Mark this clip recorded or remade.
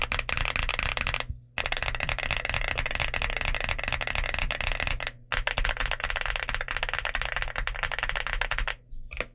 recorded